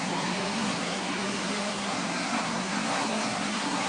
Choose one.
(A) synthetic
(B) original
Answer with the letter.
A